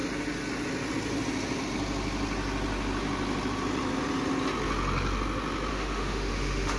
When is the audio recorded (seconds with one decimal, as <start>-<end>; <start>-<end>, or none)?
0.0-5.7